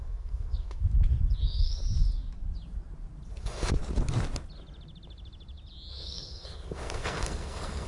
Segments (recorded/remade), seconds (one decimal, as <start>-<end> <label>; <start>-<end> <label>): 0.0-0.8 remade; 0.8-1.4 recorded; 1.4-1.8 remade; 1.8-3.3 recorded; 3.3-3.8 remade; 3.8-5.9 recorded; 5.9-7.9 remade